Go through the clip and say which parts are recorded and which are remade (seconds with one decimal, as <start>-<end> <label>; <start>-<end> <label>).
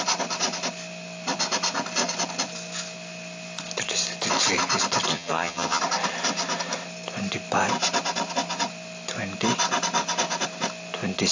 0.0-5.1 recorded; 5.1-5.8 remade; 5.8-11.3 recorded